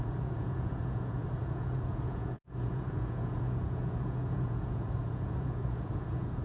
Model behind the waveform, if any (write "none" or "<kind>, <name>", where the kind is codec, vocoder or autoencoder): vocoder, Vocos